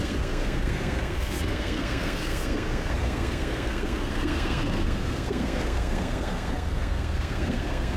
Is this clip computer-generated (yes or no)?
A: yes